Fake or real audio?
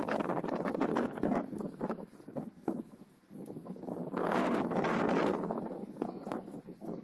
fake